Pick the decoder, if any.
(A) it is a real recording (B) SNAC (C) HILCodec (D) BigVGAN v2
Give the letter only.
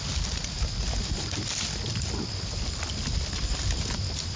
A